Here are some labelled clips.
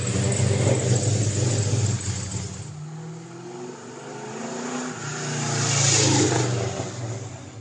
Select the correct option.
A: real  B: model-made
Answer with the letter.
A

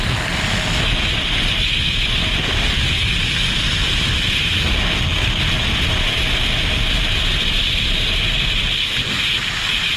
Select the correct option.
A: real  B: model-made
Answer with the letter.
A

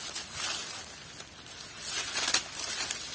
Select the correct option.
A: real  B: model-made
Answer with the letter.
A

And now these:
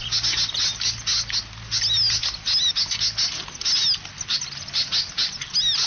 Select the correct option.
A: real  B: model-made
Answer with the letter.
A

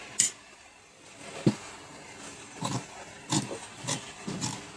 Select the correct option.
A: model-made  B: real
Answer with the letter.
B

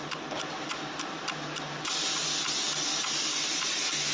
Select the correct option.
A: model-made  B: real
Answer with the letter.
B